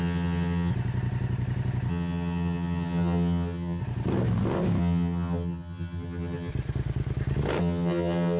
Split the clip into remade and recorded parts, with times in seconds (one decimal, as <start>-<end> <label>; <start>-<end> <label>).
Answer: 0.0-0.7 remade; 0.7-1.9 recorded; 1.9-3.8 remade; 3.8-4.8 recorded; 4.8-6.5 remade; 6.5-7.6 recorded; 7.6-8.4 remade